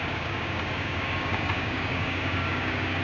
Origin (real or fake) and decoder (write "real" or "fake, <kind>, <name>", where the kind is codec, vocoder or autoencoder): fake, codec, DAC